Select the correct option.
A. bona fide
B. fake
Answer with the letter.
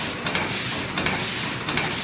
A